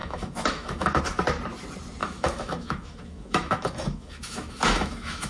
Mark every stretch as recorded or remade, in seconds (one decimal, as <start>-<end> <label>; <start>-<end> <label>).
0.0-1.0 remade; 1.0-2.0 recorded; 2.0-5.3 remade